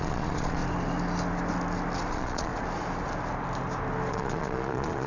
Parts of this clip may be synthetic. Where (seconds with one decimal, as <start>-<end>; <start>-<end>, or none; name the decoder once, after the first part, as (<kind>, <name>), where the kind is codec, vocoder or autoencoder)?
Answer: 0.0-0.6 (vocoder, Vocos); 2.1-2.5; 4.1-5.1